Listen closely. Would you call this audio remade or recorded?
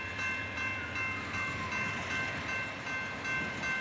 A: recorded